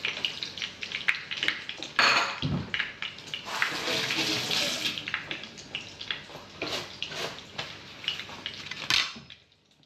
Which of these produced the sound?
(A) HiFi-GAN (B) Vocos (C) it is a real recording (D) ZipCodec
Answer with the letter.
C